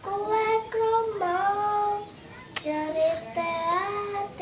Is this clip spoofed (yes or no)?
no